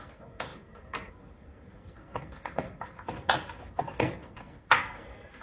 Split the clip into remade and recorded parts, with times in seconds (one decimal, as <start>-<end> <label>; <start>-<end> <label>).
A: 0.0-5.4 remade